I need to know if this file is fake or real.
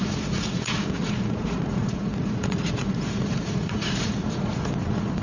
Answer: fake